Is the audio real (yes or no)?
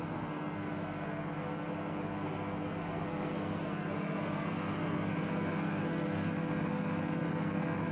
no